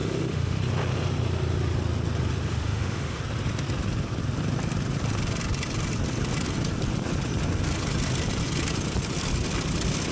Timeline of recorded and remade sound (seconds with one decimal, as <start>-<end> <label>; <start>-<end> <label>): 0.0-0.6 remade; 0.6-2.5 recorded; 2.5-3.2 remade; 3.2-10.1 recorded

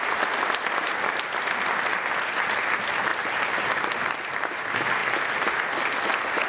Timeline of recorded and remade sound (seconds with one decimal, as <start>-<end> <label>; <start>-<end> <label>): 0.0-6.5 recorded

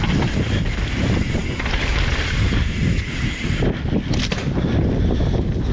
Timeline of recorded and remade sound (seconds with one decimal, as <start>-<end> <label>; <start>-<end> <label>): 0.0-5.7 recorded

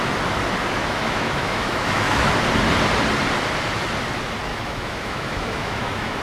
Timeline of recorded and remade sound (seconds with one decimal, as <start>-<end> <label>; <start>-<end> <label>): 0.0-0.8 recorded; 0.8-2.3 remade; 2.3-4.5 recorded; 4.5-6.2 remade

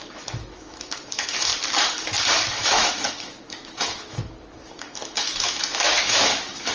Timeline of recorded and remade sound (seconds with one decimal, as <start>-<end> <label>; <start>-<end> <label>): 0.0-1.5 remade; 1.5-2.5 recorded; 2.5-6.7 remade